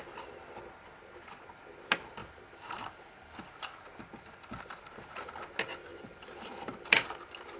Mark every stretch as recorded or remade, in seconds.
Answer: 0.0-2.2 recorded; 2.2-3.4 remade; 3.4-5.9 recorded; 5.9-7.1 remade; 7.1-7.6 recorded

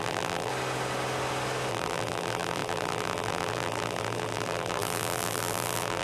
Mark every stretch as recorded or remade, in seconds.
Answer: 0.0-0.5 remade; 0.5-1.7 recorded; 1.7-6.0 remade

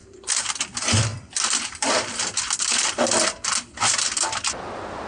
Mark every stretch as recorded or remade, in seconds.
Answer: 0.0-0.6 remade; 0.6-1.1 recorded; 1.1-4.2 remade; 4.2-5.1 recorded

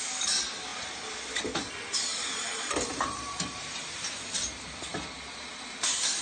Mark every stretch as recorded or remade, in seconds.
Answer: 0.0-2.1 recorded; 2.1-3.8 remade; 3.8-6.2 recorded